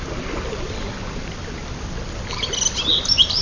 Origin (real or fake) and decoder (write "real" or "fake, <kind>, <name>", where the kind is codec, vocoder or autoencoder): fake, vocoder, BigVGAN v2